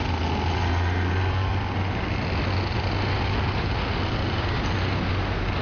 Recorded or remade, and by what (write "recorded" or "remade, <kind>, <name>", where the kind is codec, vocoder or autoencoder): recorded